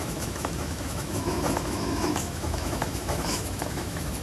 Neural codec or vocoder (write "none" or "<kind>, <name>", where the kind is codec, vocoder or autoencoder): autoencoder, DAC-VAE